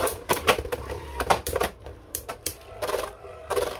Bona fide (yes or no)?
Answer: no